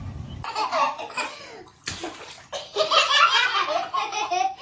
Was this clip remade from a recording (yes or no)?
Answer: no